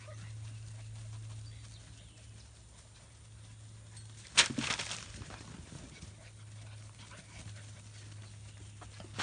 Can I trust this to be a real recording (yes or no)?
yes